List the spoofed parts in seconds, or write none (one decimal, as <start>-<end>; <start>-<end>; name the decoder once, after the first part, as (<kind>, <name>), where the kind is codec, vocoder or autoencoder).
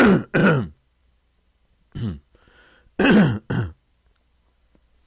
none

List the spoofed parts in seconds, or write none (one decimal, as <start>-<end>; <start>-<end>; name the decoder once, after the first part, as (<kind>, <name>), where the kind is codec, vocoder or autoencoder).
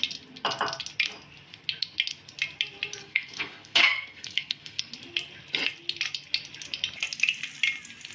3.0-4.9 (codec, SNAC)